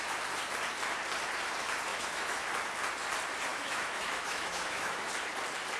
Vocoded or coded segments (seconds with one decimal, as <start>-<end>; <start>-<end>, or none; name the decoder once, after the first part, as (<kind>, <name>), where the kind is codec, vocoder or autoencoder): 1.9-2.5 (autoencoder, DAC-VAE); 3.5-5.1